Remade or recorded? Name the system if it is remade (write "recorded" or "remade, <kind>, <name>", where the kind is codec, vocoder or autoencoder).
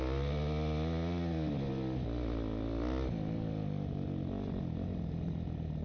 recorded